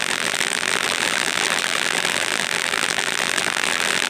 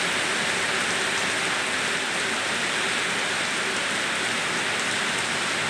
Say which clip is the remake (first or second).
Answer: first